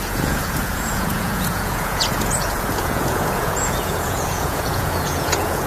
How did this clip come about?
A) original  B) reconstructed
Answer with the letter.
B